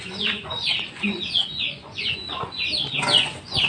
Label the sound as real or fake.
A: fake